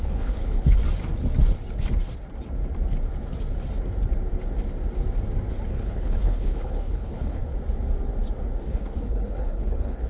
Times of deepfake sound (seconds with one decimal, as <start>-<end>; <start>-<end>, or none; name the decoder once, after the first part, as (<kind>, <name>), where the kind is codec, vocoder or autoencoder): 0.0-0.8 (codec, HILCodec); 5.5-7.4; 8.6-10.1